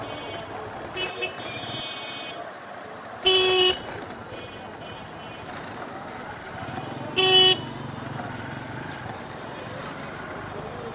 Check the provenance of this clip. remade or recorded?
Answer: recorded